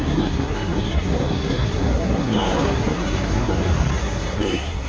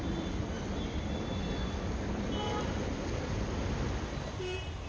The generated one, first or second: first